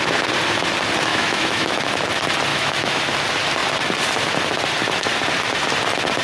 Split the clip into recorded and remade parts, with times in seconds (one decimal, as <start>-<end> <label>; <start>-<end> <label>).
0.0-1.1 recorded; 1.1-1.9 remade; 1.9-2.5 recorded; 2.5-3.0 remade; 3.0-6.2 recorded